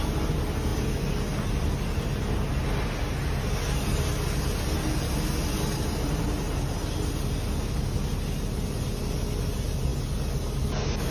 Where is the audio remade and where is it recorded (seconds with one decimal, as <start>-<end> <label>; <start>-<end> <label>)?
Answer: 0.0-11.1 recorded